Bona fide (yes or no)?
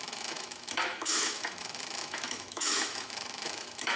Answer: no